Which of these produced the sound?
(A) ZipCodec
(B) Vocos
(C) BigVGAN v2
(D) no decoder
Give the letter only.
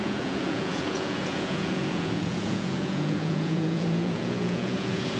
B